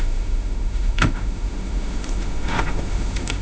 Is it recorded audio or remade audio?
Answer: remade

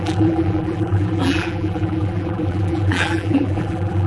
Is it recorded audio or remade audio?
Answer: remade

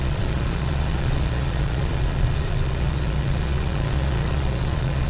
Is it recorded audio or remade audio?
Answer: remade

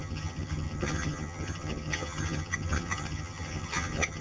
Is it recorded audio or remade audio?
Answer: remade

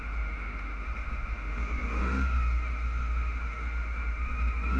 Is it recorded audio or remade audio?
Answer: remade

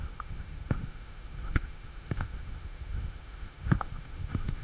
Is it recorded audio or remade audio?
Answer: remade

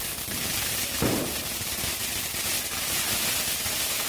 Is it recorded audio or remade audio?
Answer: recorded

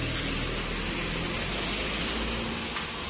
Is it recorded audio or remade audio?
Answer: recorded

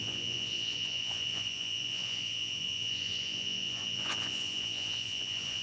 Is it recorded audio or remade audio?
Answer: remade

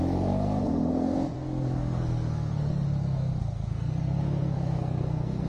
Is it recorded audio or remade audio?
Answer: remade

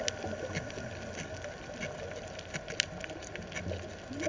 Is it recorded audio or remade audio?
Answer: recorded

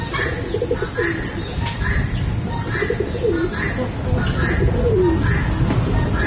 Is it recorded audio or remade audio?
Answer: recorded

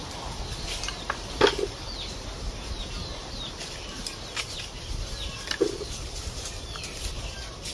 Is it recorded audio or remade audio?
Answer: recorded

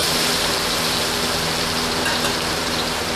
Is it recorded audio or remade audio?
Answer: remade